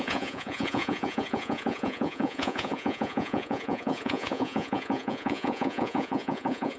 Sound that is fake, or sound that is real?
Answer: fake